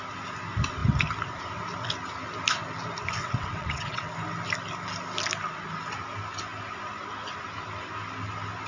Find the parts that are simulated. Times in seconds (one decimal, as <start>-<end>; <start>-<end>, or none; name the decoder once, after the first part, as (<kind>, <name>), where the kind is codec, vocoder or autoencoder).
3.2-4.1 (vocoder, WaveNeXt)

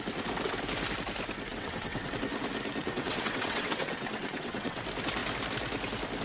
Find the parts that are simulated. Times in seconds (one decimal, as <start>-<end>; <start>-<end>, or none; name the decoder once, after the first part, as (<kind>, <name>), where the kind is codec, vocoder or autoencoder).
1.5-2.2 (vocoder, WaveNeXt); 2.8-4.8

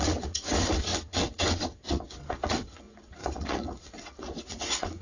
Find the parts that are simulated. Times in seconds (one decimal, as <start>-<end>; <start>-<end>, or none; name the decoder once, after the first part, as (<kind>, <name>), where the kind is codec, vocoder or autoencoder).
0.0-5.0 (vocoder, WaveNeXt)